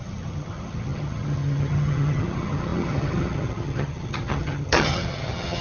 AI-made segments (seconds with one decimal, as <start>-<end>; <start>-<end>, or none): 0.0-5.6